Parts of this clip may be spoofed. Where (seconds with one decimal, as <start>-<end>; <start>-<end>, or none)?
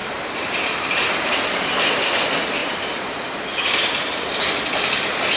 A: 0.0-1.2; 2.6-4.4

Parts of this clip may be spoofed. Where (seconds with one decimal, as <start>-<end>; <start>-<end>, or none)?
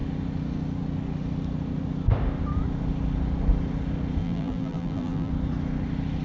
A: 4.2-5.3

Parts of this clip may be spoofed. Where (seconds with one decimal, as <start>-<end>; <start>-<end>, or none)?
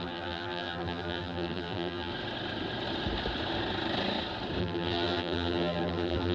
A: 0.0-2.1; 4.6-6.3